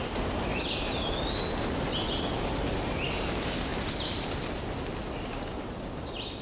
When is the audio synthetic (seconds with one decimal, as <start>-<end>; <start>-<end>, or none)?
0.0-0.5; 2.4-3.7; 5.2-6.4